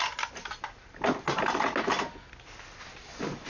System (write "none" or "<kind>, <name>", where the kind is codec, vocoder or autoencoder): none